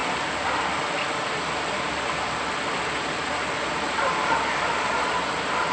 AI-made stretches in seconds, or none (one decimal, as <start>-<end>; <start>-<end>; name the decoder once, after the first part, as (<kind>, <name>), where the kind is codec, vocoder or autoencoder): none

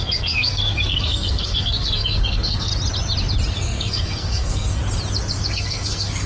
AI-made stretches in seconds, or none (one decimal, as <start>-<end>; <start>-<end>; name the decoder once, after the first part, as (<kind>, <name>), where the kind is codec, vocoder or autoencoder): 0.0-2.7 (codec, SNAC); 3.5-4.8; 5.5-6.3

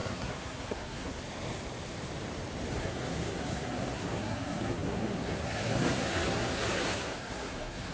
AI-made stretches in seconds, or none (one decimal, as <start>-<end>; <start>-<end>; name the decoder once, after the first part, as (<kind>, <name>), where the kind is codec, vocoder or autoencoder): 0.0-1.2 (codec, SNAC); 2.7-7.9

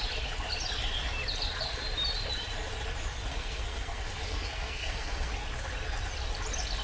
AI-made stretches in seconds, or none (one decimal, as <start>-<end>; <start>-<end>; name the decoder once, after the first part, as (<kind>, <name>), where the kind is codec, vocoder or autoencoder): 3.3-5.3 (codec, SNAC)

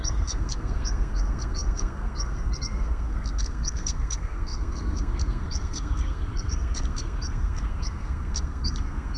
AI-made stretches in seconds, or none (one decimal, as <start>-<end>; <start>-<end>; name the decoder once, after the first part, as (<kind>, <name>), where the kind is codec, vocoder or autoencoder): 0.0-9.2 (codec, SNAC)

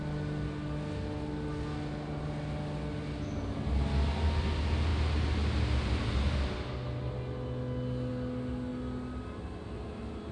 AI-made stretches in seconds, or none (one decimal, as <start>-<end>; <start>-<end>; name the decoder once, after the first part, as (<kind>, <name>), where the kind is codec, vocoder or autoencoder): none